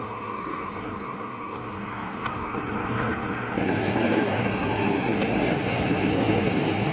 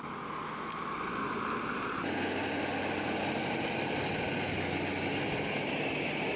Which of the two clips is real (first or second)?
second